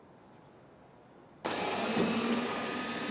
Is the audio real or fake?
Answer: real